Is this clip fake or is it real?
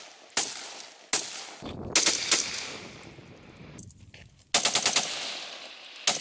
real